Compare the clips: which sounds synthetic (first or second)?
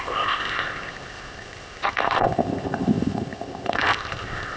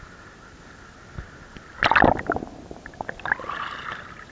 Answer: first